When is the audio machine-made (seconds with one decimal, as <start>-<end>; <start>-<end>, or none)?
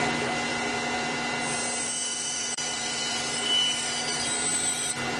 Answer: 0.5-1.3; 2.1-3.4